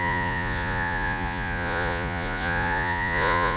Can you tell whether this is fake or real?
fake